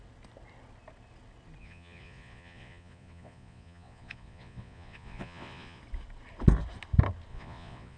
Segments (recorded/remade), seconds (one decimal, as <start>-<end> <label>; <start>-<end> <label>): 0.0-1.6 recorded; 1.6-5.8 remade; 5.8-7.3 recorded; 7.3-8.0 remade